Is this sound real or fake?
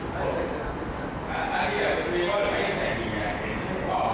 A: real